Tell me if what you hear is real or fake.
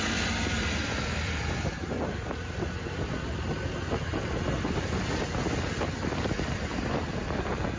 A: real